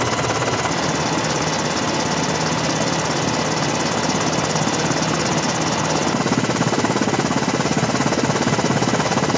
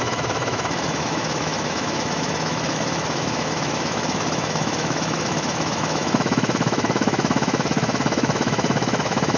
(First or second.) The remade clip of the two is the second